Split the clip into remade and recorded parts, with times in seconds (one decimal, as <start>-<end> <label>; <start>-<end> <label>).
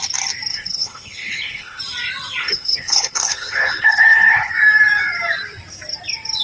0.0-0.5 recorded; 0.5-1.8 remade; 1.8-2.4 recorded; 2.4-4.5 remade; 4.5-6.4 recorded